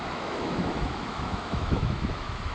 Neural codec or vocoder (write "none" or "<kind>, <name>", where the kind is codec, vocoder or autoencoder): autoencoder, DAC-VAE